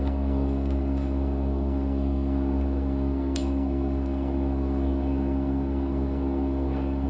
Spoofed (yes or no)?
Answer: yes